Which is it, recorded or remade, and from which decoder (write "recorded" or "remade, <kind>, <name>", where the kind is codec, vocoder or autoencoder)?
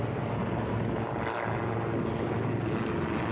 recorded